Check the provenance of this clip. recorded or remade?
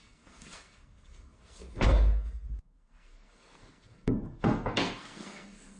remade